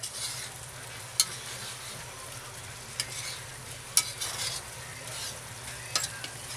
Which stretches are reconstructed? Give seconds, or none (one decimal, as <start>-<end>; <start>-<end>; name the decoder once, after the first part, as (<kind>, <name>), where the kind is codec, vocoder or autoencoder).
none